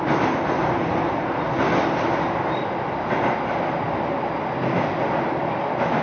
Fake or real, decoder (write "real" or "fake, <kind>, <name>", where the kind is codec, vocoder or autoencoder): real